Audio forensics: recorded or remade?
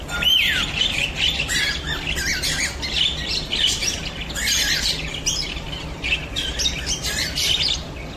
recorded